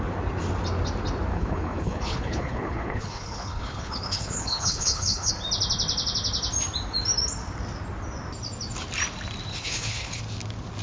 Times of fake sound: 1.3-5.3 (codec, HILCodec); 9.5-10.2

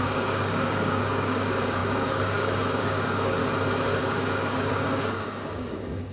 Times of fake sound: 0.0-3.4 (codec, DAC); 4.0-6.1

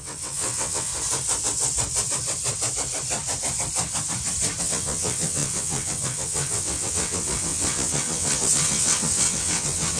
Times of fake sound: 0.0-0.9 (vocoder, WaveNeXt); 4.6-10.0

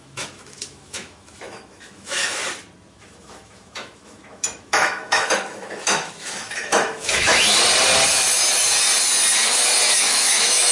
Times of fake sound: 0.0-2.4 (autoencoder, DAC-VAE); 2.9-7.3; 10.0-10.7

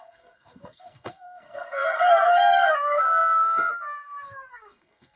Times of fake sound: 0.0-5.2 (codec, SNAC)

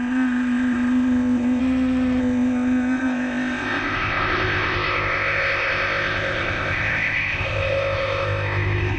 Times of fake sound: 0.0-1.6 (codec, ZipCodec); 2.2-9.0

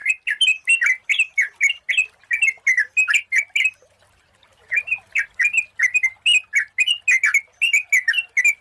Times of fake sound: none